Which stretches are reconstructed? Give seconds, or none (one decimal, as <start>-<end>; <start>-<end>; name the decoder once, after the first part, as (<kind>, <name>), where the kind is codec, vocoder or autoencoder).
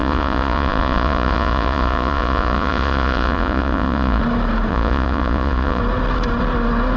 0.0-4.2 (vocoder, Vocos); 4.7-5.8